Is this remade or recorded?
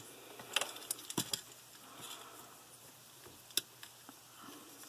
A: recorded